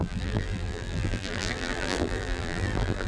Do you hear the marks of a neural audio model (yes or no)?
yes